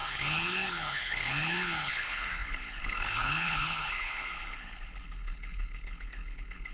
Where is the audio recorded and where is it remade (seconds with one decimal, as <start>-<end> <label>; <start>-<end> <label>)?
0.0-6.7 remade